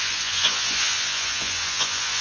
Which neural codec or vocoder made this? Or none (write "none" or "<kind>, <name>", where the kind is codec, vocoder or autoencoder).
vocoder, Vocos